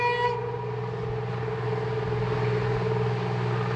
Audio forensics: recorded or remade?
recorded